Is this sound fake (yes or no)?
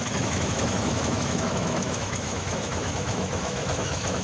yes